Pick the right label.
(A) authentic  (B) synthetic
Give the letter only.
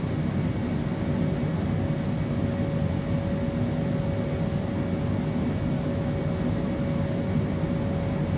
A